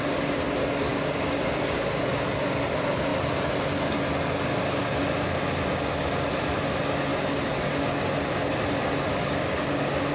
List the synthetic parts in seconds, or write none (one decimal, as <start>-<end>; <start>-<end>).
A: 0.9-1.9; 7.1-7.7; 9.1-10.1